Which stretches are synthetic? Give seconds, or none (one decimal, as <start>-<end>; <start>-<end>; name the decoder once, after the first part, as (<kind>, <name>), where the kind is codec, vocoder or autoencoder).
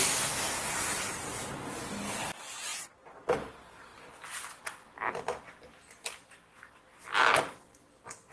none